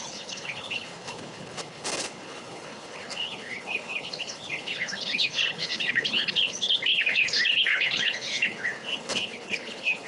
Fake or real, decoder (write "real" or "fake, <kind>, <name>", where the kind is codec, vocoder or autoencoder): fake, codec, HILCodec